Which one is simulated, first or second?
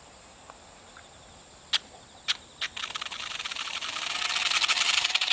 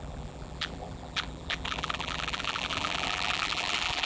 second